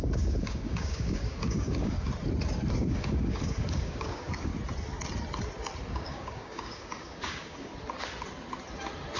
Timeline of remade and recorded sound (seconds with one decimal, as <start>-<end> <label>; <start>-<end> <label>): 0.0-2.1 remade; 2.1-2.7 recorded; 2.7-4.5 remade; 4.5-5.9 recorded; 5.9-7.7 remade; 7.7-9.2 recorded